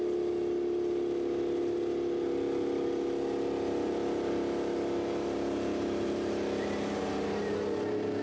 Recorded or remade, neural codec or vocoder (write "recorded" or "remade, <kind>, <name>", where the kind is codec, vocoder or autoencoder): recorded